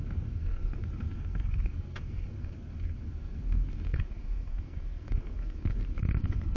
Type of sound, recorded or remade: remade